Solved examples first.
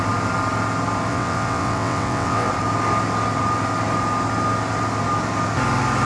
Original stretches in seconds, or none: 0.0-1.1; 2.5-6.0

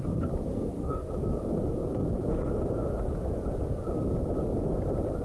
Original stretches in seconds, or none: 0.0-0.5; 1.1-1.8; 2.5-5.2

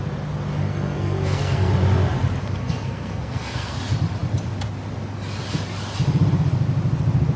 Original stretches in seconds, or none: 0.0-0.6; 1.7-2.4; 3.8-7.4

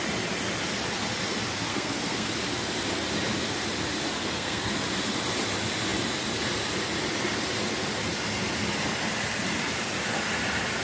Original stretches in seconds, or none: 0.0-1.7; 2.3-4.2; 4.7-10.8